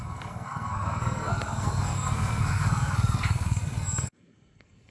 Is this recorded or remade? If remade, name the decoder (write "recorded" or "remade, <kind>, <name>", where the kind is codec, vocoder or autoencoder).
remade, codec, SNAC